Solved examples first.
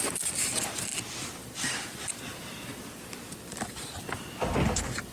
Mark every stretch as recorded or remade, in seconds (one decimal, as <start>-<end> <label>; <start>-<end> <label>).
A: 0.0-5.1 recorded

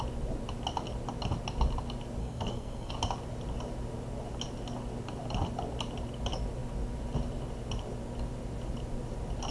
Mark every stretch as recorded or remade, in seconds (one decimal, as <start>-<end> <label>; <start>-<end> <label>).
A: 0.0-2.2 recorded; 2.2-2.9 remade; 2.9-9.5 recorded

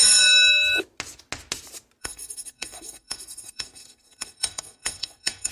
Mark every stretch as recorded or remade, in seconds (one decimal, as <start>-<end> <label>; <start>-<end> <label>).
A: 0.0-2.0 recorded; 2.0-5.5 remade

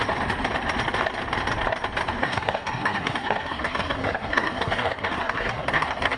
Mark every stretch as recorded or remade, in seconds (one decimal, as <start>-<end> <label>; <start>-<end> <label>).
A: 0.0-2.2 recorded; 2.2-6.2 remade